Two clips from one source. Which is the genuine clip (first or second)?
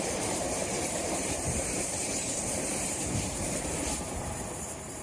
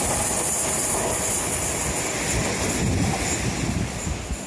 second